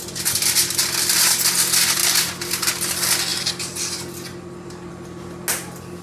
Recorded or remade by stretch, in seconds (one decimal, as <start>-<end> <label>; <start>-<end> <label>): 0.0-6.0 recorded